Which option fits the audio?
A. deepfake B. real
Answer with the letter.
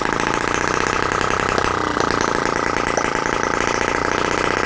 B